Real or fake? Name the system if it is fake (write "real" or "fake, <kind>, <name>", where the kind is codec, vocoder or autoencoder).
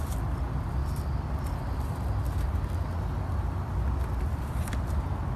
real